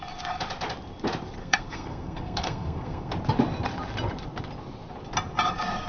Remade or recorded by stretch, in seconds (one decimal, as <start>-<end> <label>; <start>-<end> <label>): 0.0-1.4 recorded; 1.4-3.1 remade; 3.1-5.9 recorded